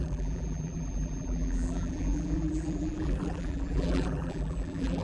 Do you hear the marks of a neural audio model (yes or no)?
yes